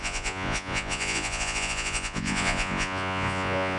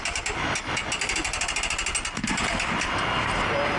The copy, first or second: first